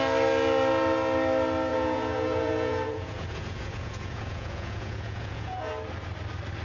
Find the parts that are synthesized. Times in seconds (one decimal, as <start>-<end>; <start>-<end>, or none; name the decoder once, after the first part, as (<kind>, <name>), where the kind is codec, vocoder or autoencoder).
1.7-5.7 (vocoder, Vocos)